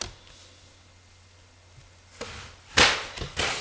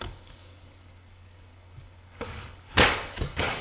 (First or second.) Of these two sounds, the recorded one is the first